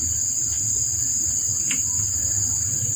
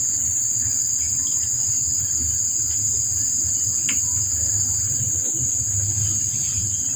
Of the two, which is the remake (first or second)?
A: first